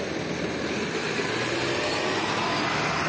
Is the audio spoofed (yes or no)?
no